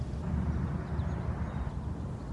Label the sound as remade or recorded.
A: recorded